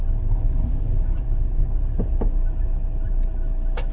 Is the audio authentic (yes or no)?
yes